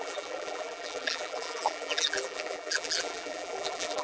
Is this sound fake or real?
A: fake